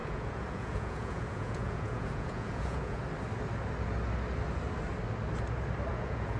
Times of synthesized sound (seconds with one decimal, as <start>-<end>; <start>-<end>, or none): 0.0-3.0; 5.9-6.4